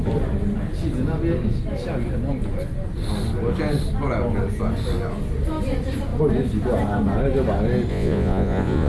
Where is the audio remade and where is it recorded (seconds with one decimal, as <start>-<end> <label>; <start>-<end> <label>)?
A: 0.0-7.9 recorded; 7.9-8.9 remade